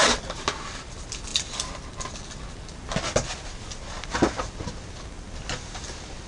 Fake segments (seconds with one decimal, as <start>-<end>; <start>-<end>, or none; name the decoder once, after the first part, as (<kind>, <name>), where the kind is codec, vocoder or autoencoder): none

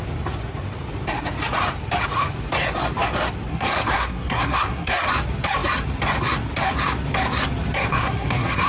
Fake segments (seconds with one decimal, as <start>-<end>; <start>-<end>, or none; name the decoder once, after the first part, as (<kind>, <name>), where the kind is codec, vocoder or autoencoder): 3.5-5.1 (codec, SNAC); 7.9-8.7

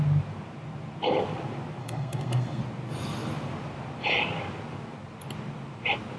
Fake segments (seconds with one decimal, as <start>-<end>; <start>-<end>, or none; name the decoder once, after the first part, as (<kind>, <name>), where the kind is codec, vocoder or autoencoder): 1.8-2.6 (codec, SNAC)